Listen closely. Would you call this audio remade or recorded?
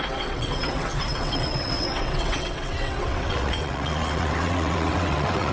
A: remade